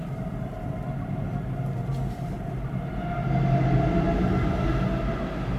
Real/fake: real